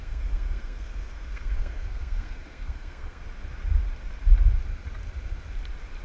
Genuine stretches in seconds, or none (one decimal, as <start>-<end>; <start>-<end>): 3.2-6.0